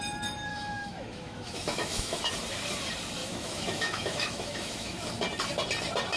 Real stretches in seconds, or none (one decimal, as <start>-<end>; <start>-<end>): 0.0-0.5; 2.3-3.2; 5.1-6.2